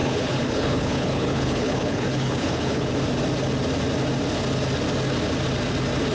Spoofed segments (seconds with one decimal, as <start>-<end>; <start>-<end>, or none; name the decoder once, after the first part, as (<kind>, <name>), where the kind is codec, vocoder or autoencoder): 0.0-2.9 (codec, HILCodec)